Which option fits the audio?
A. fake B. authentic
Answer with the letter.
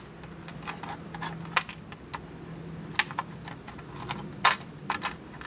B